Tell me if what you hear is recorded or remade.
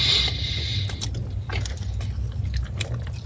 recorded